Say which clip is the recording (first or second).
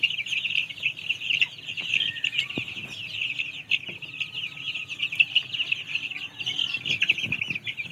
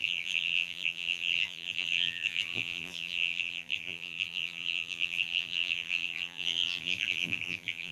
first